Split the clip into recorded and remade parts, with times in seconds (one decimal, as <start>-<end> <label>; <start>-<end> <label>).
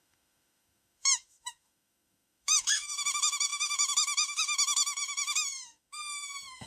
0.0-6.7 remade